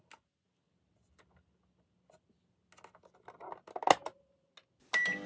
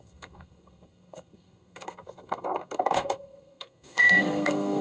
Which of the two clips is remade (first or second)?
second